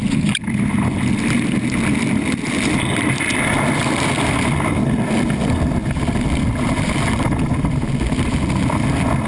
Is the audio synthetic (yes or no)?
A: no